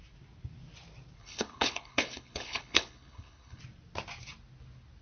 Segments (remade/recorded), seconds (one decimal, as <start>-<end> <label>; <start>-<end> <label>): 0.0-1.2 recorded; 1.2-3.6 remade; 3.6-5.0 recorded